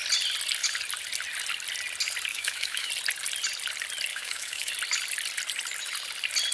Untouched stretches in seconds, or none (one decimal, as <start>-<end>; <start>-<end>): 0.0-2.3; 2.9-4.1; 4.7-6.5